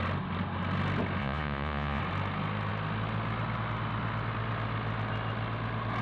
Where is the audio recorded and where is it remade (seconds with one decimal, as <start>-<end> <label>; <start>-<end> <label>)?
0.0-1.2 recorded; 1.2-2.0 remade; 2.0-6.0 recorded